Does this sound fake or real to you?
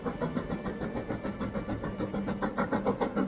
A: real